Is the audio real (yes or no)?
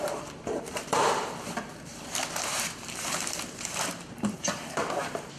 no